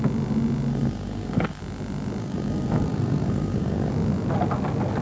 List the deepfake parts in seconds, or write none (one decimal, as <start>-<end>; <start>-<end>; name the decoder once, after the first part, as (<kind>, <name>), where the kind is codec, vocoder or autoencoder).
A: 0.7-1.6 (codec, SNAC); 2.2-3.9